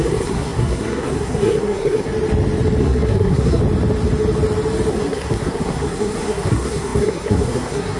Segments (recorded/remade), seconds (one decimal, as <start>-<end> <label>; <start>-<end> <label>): 0.0-2.1 remade; 2.1-2.8 recorded; 2.8-3.6 remade; 3.6-4.9 recorded; 4.9-8.0 remade